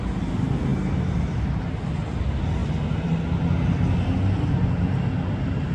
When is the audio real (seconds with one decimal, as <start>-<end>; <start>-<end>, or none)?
0.0-5.7